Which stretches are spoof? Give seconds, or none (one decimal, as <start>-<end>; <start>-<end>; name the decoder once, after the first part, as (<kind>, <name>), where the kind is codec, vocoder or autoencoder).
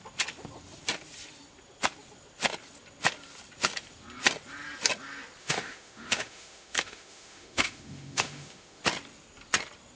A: 5.4-8.8 (autoencoder, DAC-VAE)